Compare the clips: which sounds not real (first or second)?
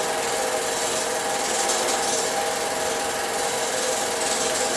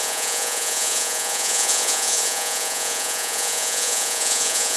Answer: second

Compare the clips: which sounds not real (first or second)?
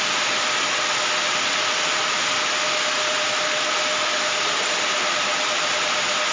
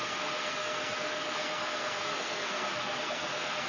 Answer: second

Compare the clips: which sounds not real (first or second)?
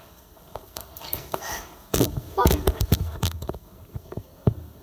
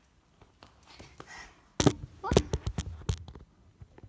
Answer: first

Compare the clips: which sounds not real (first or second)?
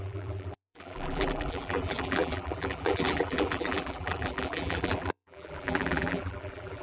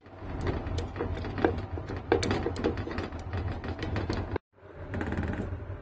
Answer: first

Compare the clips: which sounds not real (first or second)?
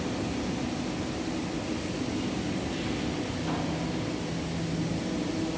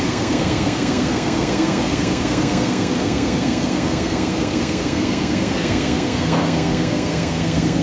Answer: second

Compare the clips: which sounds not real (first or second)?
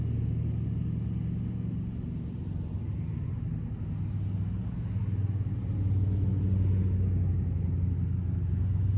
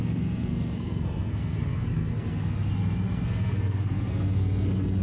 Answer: second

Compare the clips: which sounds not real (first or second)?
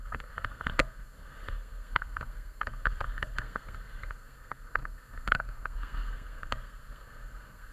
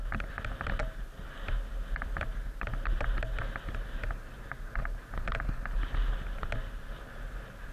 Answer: first